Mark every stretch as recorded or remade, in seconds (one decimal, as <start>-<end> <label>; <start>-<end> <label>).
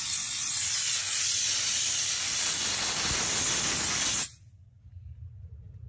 0.0-5.9 recorded